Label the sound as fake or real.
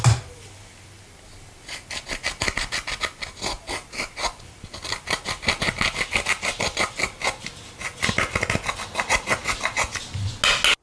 real